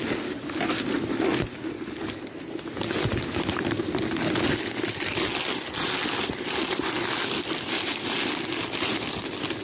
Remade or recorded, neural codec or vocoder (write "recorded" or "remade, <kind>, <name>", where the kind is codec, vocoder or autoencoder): recorded